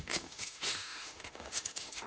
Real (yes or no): no